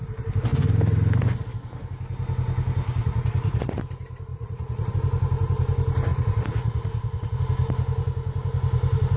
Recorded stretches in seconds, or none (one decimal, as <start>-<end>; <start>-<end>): 0.0-3.0; 3.8-4.3; 4.9-6.1; 7.4-9.2